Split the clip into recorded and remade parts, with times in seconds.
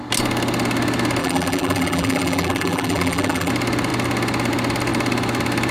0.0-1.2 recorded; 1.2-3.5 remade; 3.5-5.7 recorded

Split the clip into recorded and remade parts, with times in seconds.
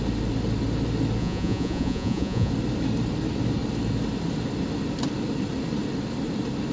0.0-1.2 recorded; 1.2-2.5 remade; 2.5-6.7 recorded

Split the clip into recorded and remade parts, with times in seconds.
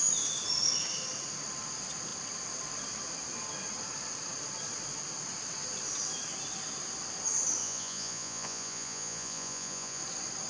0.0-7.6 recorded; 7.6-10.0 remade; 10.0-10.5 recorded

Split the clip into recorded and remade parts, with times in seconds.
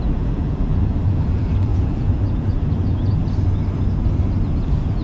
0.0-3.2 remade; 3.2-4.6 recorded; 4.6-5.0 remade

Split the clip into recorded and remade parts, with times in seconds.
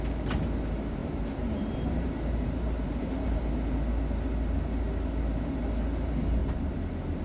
0.0-1.0 recorded; 1.0-3.4 remade; 3.4-7.2 recorded